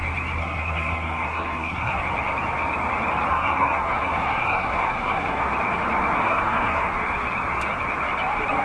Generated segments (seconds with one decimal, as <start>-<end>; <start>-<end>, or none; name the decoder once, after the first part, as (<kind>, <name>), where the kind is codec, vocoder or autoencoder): 0.4-2.0 (codec, SNAC); 3.3-5.4; 6.2-6.9